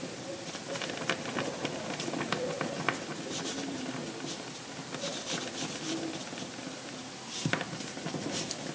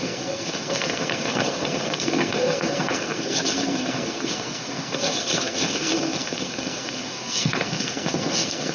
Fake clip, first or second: second